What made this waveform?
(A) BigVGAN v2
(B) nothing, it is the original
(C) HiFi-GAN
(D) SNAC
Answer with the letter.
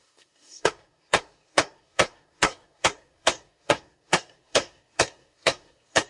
D